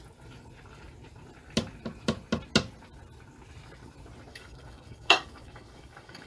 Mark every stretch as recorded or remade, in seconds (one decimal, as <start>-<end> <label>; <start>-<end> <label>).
0.0-4.3 recorded; 4.3-6.3 remade